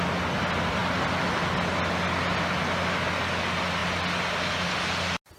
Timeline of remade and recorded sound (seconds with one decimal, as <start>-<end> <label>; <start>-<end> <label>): 0.0-5.4 recorded